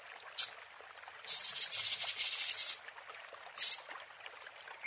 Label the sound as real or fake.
real